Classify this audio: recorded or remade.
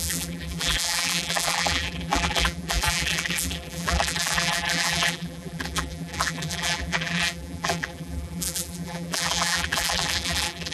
remade